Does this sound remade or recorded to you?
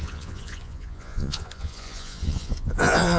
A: remade